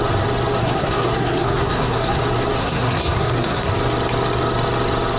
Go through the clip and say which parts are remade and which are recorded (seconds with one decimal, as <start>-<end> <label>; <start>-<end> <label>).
0.0-0.6 recorded; 0.6-2.2 remade; 2.2-2.6 recorded; 2.6-3.7 remade; 3.7-5.2 recorded